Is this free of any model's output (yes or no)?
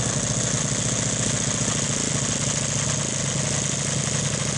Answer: yes